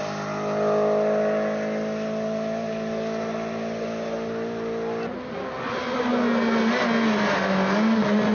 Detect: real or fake real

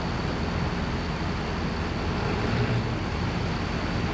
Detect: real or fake real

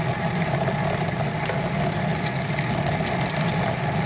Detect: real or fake real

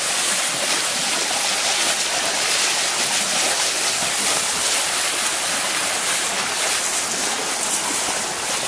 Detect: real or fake real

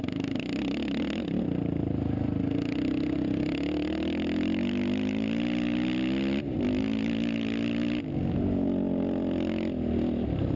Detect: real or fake real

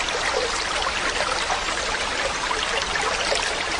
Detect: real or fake real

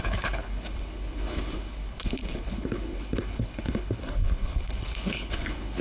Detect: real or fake fake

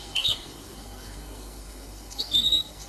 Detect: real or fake fake